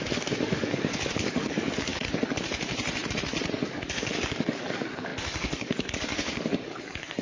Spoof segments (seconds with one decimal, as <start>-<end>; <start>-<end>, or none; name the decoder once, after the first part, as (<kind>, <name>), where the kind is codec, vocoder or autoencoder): 0.0-1.9 (codec, DAC); 3.6-7.2